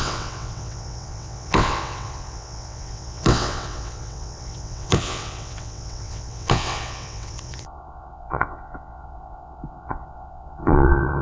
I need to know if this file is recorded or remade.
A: remade